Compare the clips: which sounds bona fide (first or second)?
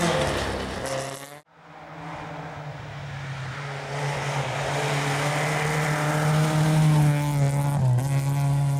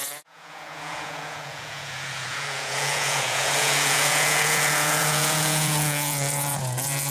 first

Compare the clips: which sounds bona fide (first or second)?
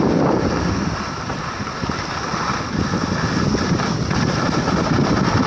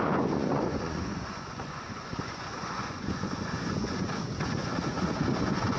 first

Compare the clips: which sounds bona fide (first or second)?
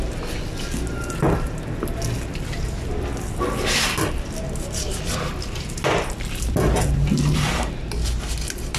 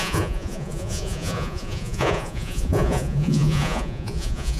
first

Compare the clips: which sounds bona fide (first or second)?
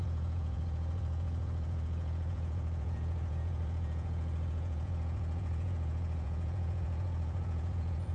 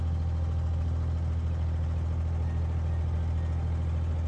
second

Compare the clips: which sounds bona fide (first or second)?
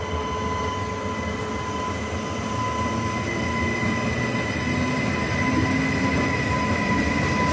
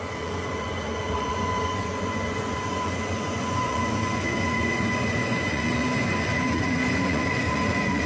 first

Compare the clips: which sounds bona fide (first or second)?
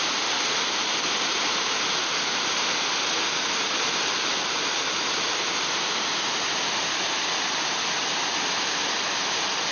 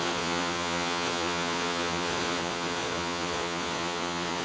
first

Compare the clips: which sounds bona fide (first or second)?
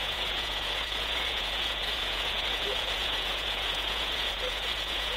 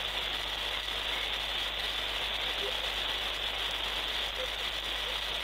second